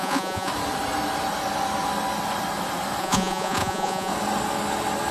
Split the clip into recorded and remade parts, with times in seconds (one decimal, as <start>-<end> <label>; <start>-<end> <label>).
0.0-0.5 remade; 0.5-3.0 recorded; 3.0-4.1 remade; 4.1-5.1 recorded